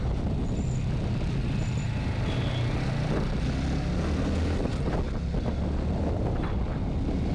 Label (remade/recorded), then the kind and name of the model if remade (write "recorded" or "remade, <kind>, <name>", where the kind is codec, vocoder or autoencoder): recorded